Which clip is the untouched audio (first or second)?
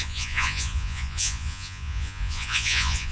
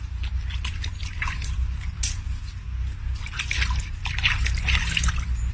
second